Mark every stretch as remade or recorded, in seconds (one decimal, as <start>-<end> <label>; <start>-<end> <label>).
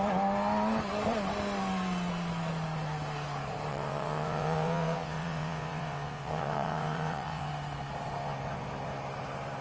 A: 0.0-3.7 recorded; 3.7-7.5 remade; 7.5-9.6 recorded